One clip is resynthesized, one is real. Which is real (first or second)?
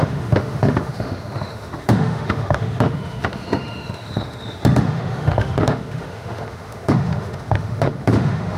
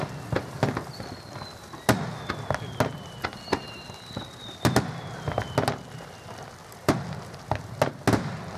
second